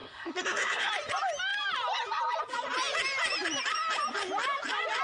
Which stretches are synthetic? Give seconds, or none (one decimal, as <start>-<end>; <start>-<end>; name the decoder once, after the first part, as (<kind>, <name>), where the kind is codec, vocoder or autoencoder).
0.0-0.9 (codec, SNAC)